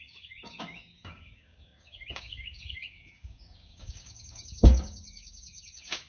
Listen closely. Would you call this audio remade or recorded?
remade